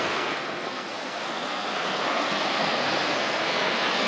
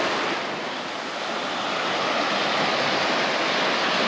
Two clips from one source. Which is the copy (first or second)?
first